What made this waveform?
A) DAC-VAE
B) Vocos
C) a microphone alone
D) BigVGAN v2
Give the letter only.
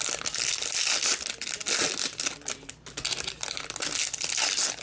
C